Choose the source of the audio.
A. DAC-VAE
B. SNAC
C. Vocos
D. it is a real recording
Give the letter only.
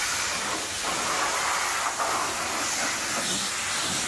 D